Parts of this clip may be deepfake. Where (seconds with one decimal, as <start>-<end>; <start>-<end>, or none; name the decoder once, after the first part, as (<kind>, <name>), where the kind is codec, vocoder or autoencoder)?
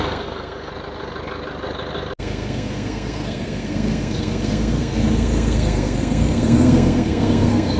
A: 0.0-0.7 (codec, SNAC); 2.2-7.8